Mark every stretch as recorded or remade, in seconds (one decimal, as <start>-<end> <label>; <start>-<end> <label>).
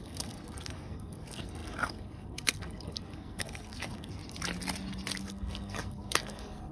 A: 0.0-4.2 remade; 4.2-5.2 recorded; 5.2-6.7 remade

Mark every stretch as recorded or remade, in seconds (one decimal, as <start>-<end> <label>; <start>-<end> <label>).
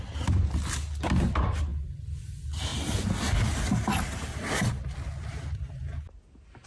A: 0.0-6.7 recorded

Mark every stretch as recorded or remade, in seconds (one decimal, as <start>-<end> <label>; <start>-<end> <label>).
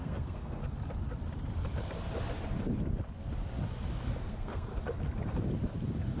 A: 0.0-0.6 remade; 0.6-4.2 recorded; 4.2-4.7 remade; 4.7-6.2 recorded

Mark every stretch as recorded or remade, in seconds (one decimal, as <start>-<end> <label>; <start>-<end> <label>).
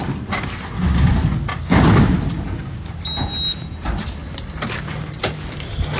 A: 0.0-6.0 recorded